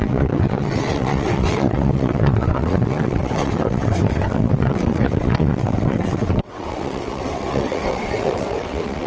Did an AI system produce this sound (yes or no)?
yes